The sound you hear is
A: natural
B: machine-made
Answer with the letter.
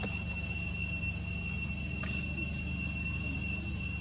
A